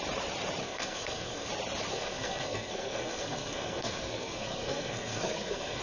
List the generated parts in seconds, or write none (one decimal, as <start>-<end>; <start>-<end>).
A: 0.6-1.5; 1.9-5.8